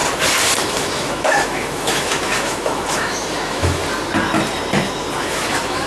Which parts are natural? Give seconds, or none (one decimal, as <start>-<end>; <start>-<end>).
0.0-0.6; 3.8-5.2